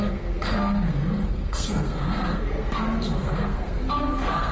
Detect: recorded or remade remade